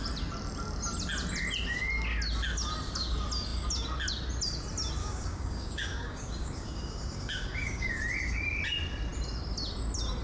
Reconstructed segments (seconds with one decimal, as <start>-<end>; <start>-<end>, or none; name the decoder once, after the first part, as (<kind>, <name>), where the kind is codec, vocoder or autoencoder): 5.0-8.0 (codec, DAC)